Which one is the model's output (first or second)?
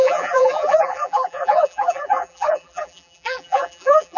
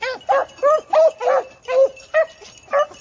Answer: first